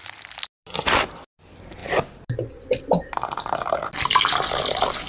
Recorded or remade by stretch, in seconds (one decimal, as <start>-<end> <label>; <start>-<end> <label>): 0.0-5.1 recorded